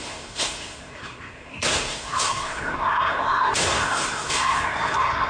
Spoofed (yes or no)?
yes